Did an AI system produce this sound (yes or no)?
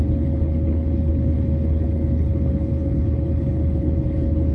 yes